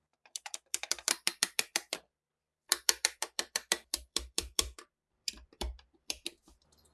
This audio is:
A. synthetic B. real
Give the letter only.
A